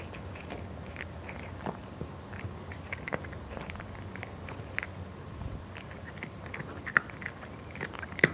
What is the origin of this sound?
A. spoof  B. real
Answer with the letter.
B